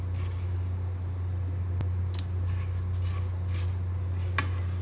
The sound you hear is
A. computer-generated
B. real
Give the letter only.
B